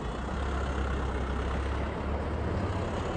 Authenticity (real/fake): real